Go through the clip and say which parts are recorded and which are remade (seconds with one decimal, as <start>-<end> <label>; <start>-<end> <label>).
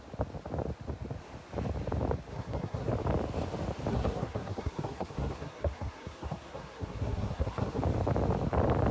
0.0-2.3 recorded; 2.3-2.9 remade; 2.9-3.9 recorded; 3.9-7.8 remade; 7.8-8.9 recorded